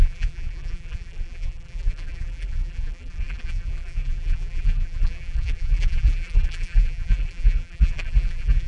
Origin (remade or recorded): remade